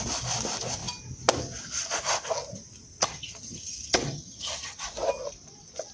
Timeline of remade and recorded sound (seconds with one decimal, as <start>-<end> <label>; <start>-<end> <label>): 0.0-3.0 recorded; 3.0-4.8 remade; 4.8-5.9 recorded